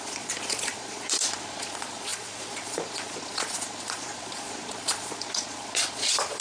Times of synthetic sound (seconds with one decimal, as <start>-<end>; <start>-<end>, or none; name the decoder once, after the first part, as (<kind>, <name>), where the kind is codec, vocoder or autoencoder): 0.0-6.4 (vocoder, Vocos)